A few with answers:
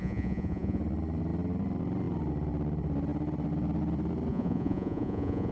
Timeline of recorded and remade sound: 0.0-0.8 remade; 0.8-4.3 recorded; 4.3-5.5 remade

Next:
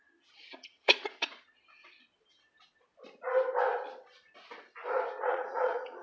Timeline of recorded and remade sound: 0.0-1.6 remade; 1.6-5.2 recorded; 5.2-6.0 remade

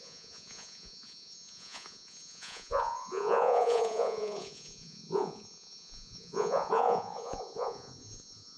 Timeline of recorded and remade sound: 0.0-8.6 remade